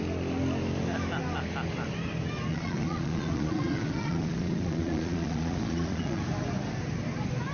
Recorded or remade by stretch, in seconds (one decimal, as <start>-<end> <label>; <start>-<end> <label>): 0.0-2.5 recorded; 2.5-6.2 remade; 6.2-7.5 recorded

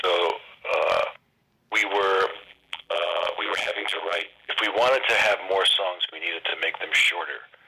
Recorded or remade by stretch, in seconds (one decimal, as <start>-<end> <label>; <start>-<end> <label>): 0.0-2.3 recorded; 2.3-4.5 remade; 4.5-7.7 recorded

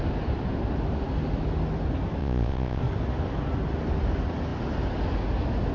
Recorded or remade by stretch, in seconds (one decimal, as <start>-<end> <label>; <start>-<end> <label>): 0.0-2.2 recorded; 2.2-2.8 remade; 2.8-5.7 recorded